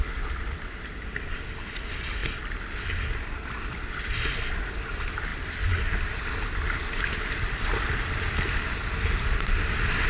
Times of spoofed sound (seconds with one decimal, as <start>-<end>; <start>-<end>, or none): none